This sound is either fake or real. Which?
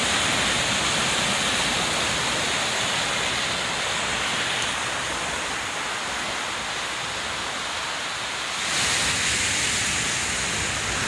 real